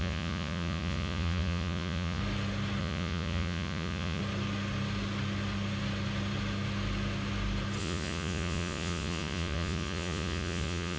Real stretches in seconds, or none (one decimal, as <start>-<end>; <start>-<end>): 2.2-2.8; 4.2-7.8